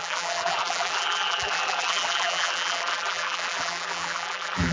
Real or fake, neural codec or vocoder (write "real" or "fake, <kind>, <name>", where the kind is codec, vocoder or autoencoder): fake, vocoder, BigVGAN v2